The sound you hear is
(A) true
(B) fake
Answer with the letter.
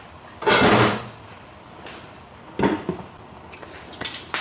A